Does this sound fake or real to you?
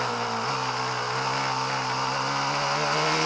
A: real